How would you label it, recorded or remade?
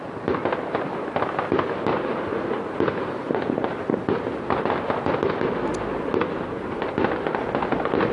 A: recorded